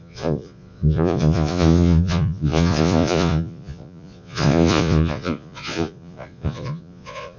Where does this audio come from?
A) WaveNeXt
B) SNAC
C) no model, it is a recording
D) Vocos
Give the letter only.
D